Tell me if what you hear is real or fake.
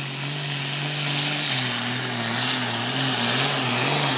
real